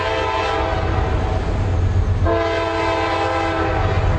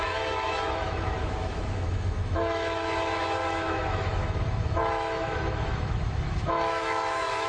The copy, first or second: second